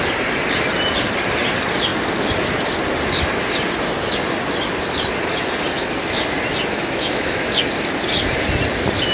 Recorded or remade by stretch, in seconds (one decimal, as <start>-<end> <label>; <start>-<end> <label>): 0.0-6.7 recorded; 6.7-7.5 remade; 7.5-9.1 recorded